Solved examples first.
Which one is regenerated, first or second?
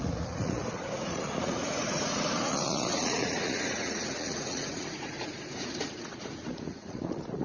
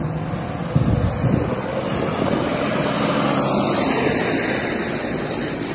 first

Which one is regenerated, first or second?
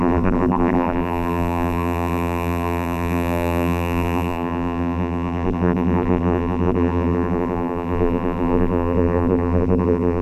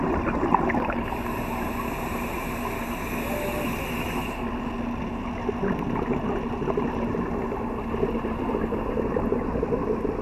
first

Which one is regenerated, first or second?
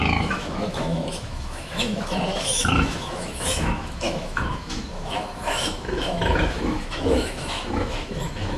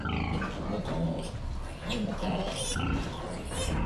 first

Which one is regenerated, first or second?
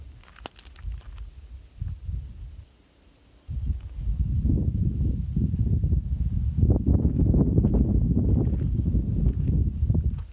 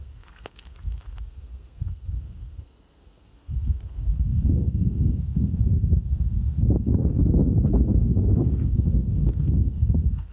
second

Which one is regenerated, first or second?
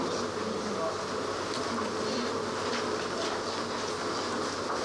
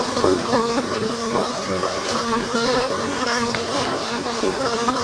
second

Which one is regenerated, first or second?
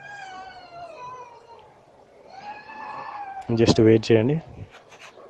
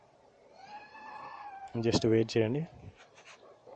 second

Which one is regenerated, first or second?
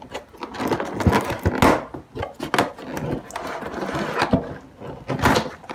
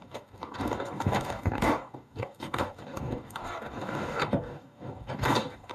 second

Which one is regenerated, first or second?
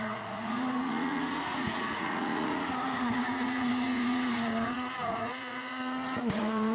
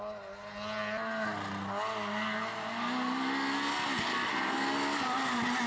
first